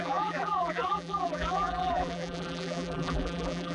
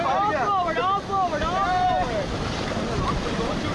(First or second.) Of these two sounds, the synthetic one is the first